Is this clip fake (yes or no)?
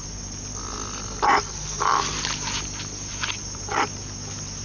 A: no